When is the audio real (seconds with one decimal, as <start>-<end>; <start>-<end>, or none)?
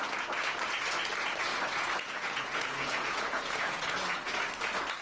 0.0-1.5; 4.0-5.0